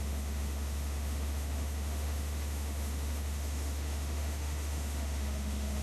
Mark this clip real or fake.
fake